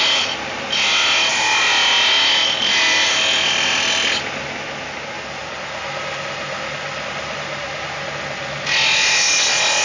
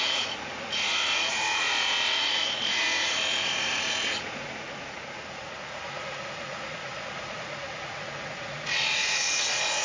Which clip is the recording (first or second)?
first